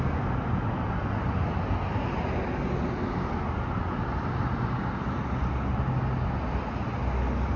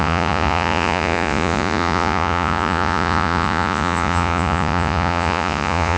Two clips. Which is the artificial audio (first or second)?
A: second